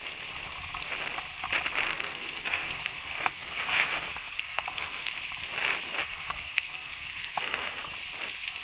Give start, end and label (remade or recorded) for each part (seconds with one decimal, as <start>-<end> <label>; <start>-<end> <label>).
0.0-1.9 recorded; 1.9-5.1 remade; 5.1-6.0 recorded; 6.0-7.9 remade; 7.9-8.6 recorded